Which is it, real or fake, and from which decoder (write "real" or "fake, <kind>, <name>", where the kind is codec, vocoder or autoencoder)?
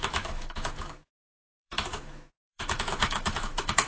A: fake, autoencoder, DAC-VAE